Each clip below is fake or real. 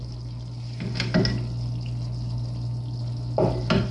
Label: real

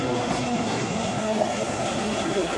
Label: fake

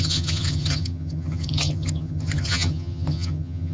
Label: fake